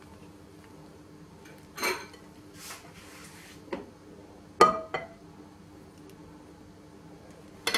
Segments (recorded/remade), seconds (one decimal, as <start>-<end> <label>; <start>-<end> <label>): 0.0-7.8 recorded